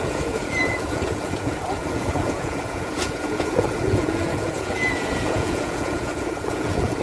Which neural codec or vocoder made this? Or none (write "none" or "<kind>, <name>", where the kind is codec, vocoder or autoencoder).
vocoder, Vocos